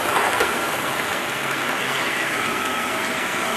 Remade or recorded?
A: remade